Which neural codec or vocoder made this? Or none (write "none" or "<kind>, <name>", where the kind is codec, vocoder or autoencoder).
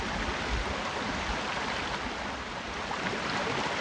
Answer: none